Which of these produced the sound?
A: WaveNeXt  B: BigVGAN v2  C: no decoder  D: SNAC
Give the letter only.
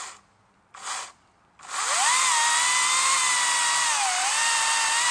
C